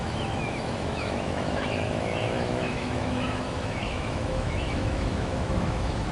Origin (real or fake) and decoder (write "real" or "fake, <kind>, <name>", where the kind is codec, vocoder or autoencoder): fake, autoencoder, DAC-VAE